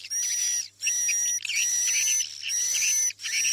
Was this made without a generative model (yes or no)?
yes